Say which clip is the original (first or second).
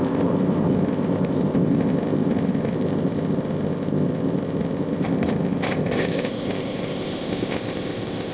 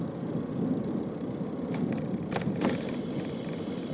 second